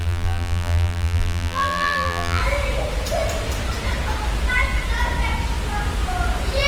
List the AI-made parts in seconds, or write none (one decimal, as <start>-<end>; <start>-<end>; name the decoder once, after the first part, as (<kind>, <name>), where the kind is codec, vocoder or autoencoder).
0.0-2.4 (vocoder, BigVGAN v2)